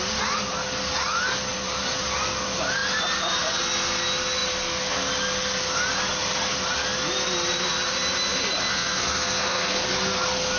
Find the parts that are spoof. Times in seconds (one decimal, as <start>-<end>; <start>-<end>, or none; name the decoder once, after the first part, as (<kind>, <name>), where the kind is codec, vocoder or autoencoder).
8.7-9.8 (codec, SNAC)